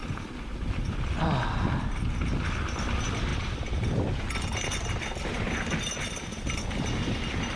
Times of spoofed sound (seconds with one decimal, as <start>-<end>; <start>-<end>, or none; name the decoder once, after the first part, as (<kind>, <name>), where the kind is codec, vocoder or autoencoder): 0.0-0.8 (vocoder, BigVGAN v2); 3.3-4.4